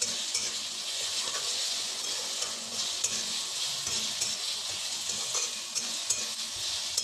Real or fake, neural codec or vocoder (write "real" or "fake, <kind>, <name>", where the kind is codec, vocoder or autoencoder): fake, vocoder, Vocos